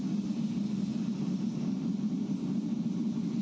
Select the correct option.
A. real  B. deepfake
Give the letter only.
A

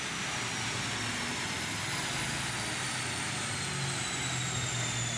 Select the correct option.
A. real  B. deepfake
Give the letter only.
A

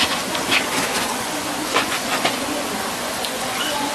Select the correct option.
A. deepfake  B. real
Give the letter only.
A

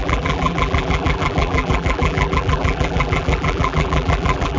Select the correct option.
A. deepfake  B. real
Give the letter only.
A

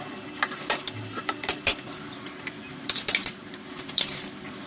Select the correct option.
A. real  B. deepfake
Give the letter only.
B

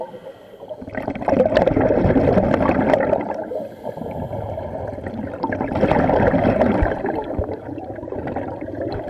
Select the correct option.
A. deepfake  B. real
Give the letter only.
B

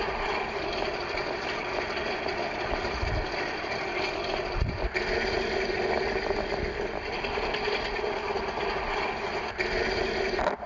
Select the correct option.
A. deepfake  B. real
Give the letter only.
B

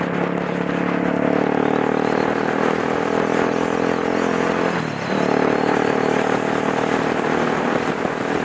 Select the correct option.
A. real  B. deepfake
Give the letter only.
A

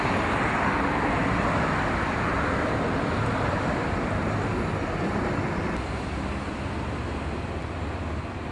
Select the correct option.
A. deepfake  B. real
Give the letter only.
B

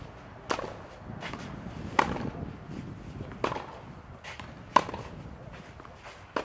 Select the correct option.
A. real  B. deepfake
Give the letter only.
A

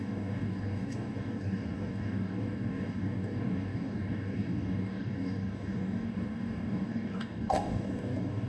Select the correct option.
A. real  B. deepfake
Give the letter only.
B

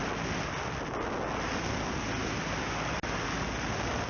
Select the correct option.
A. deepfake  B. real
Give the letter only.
B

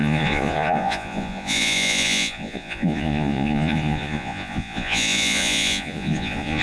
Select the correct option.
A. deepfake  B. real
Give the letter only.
A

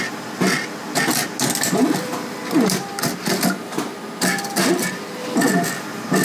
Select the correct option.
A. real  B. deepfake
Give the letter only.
A